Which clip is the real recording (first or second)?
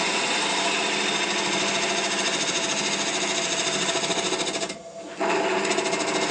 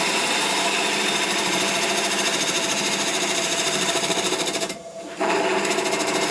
first